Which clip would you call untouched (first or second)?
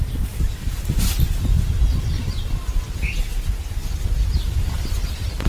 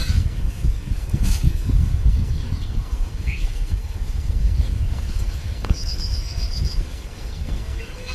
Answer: first